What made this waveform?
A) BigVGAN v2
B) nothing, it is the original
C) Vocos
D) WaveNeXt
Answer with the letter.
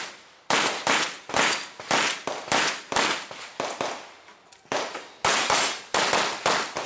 B